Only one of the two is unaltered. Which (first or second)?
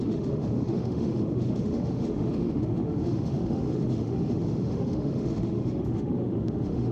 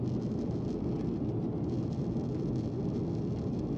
second